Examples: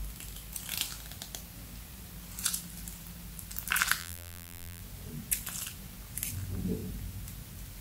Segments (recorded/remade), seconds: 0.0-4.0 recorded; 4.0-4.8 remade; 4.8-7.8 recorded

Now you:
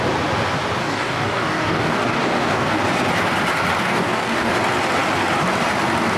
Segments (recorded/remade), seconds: 0.0-0.8 recorded; 0.8-2.8 remade; 2.8-3.8 recorded; 3.8-4.5 remade; 4.5-6.2 recorded

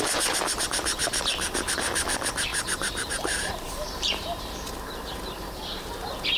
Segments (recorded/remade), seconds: 0.0-2.5 recorded; 2.5-4.5 remade; 4.5-6.4 recorded

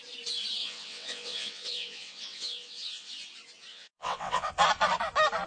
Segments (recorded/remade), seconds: 0.0-0.6 recorded; 0.6-3.1 remade; 3.1-3.7 recorded; 3.7-4.5 remade; 4.5-5.5 recorded

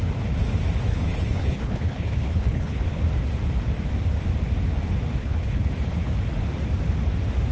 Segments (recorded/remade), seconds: 0.0-0.9 recorded; 0.9-3.0 remade; 3.0-5.2 recorded; 5.2-5.7 remade; 5.7-7.5 recorded